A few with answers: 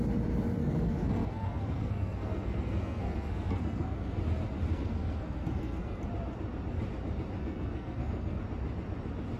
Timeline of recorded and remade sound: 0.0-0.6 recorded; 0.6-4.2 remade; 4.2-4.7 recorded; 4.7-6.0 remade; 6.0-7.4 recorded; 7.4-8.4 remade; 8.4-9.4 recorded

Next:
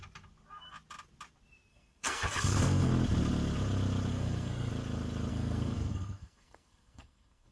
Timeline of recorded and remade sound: 0.0-1.7 recorded; 1.7-2.9 remade; 2.9-4.1 recorded; 4.1-4.7 remade; 4.7-5.3 recorded; 5.3-7.5 remade

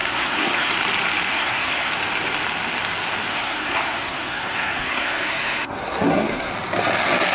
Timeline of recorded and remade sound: 0.0-0.7 remade; 0.7-1.3 recorded; 1.3-1.9 remade; 1.9-3.3 recorded; 3.3-6.5 remade; 6.5-7.3 recorded

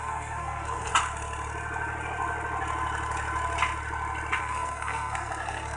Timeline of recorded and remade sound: 0.0-0.9 remade; 0.9-4.4 recorded; 4.4-5.8 remade

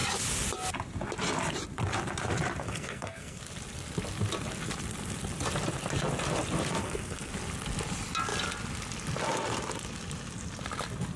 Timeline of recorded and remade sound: 0.0-2.6 recorded; 2.6-3.4 remade; 3.4-6.8 recorded; 6.8-7.3 remade; 7.3-11.2 recorded

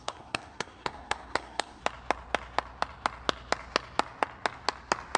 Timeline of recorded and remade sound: 0.0-1.8 remade; 1.8-5.2 recorded